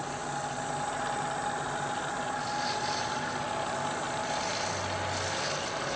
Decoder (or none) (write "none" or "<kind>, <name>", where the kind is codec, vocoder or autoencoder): none